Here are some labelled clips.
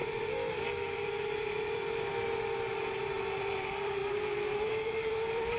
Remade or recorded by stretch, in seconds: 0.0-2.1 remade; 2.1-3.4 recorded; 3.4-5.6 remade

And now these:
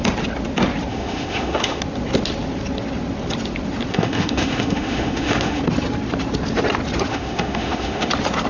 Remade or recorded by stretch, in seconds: 0.0-0.9 recorded; 0.9-1.8 remade; 1.8-3.9 recorded; 3.9-5.6 remade; 5.6-7.1 recorded; 7.1-8.1 remade; 8.1-8.5 recorded

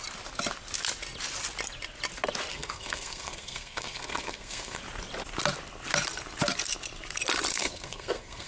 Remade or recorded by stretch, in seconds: 0.0-2.5 recorded; 2.5-4.8 remade; 4.8-7.5 recorded; 7.5-8.5 remade